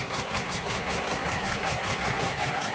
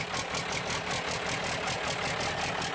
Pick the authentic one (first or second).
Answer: second